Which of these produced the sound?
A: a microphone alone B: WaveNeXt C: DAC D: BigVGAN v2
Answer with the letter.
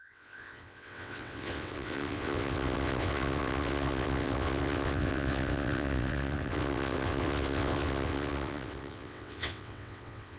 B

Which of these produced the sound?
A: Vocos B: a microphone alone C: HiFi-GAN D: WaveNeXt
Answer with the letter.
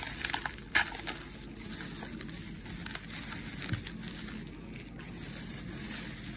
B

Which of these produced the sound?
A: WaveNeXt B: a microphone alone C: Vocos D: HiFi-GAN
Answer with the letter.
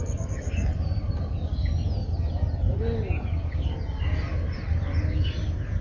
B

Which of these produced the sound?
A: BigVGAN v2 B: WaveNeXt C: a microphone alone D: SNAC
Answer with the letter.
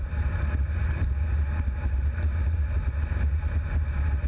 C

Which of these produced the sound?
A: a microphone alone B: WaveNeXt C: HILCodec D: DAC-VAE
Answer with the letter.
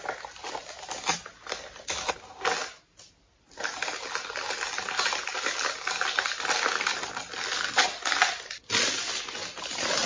A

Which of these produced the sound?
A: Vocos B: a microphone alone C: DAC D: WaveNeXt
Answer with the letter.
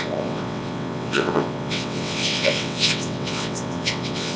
D